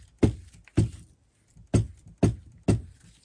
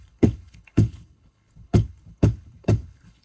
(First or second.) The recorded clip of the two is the first